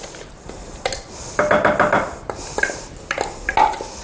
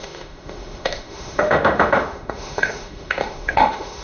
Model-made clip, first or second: second